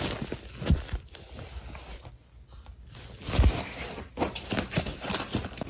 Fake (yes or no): no